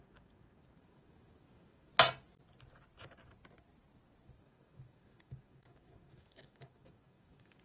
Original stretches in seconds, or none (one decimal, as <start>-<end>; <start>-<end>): 1.9-4.4